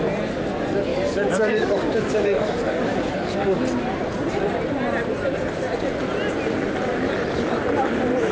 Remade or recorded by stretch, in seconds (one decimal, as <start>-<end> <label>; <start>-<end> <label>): 0.0-0.9 recorded; 0.9-3.6 remade; 3.6-8.3 recorded